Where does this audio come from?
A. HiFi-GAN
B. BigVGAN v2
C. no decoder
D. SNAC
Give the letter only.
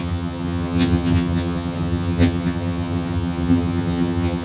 A